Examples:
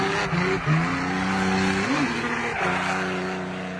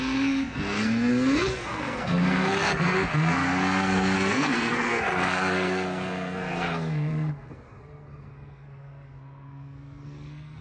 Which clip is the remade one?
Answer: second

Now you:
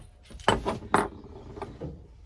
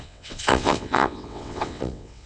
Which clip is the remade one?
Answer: second